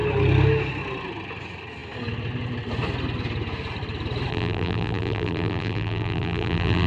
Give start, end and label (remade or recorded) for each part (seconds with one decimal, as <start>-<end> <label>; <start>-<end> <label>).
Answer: 0.0-4.3 recorded; 4.3-6.9 remade